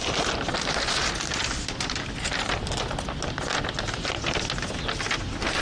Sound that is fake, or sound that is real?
real